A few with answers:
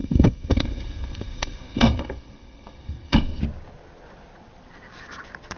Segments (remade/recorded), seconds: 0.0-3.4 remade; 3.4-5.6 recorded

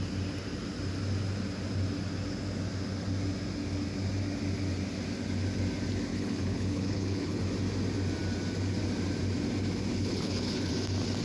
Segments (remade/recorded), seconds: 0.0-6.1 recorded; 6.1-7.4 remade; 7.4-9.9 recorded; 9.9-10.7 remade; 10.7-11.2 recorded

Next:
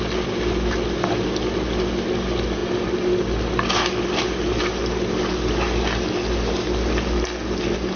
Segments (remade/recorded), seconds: 0.0-8.0 recorded

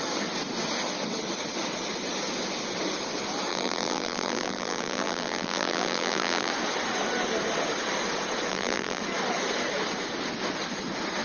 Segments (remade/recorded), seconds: 0.0-3.5 recorded; 3.5-6.5 remade; 6.5-8.5 recorded; 8.5-9.0 remade; 9.0-11.2 recorded